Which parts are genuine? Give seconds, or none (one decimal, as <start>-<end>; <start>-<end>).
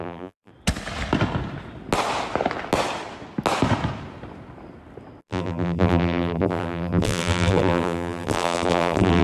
0.5-5.2